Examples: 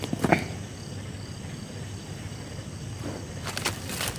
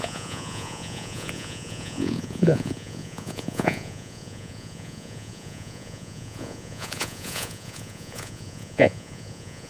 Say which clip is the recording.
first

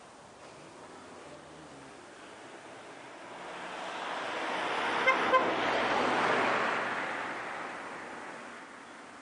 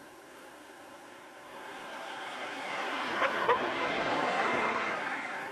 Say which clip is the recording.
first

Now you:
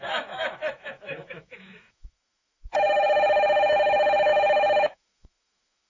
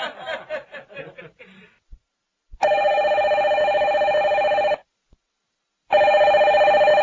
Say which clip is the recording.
second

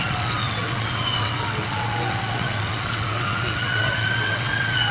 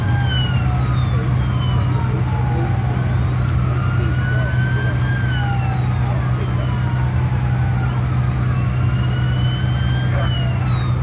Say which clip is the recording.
second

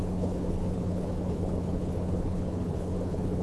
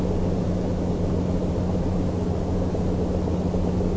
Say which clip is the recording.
second